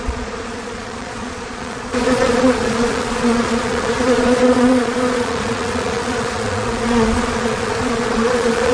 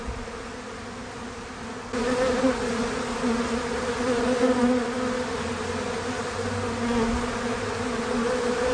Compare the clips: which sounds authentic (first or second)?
second